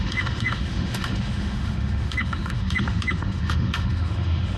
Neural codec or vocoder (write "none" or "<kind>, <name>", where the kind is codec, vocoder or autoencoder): autoencoder, DAC-VAE